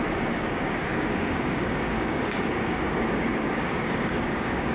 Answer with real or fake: fake